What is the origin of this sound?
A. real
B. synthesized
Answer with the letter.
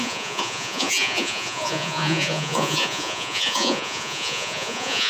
B